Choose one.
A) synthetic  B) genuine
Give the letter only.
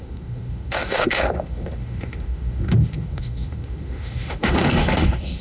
A